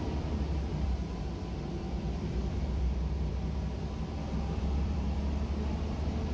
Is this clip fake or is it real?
fake